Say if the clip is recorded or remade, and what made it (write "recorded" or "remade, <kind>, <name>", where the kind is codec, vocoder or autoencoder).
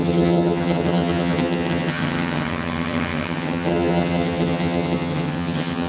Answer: remade, vocoder, HiFi-GAN